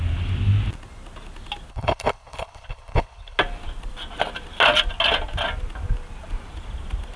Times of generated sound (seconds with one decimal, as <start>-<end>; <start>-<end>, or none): 1.7-3.4